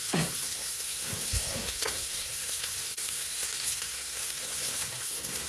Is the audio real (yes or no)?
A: no